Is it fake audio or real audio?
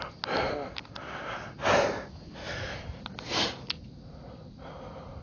real